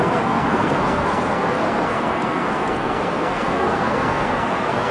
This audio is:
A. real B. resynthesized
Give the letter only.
B